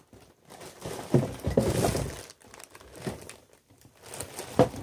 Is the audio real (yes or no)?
yes